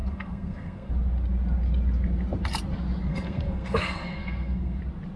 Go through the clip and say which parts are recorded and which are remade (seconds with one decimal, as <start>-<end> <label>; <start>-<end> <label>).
0.0-0.9 remade; 0.9-3.1 recorded; 3.1-4.8 remade; 4.8-5.2 recorded